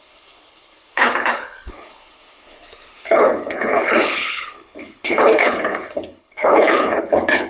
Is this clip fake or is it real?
fake